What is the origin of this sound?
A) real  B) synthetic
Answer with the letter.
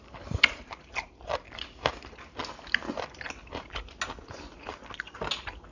A